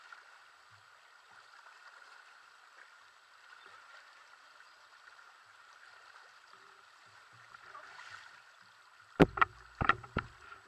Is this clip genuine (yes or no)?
no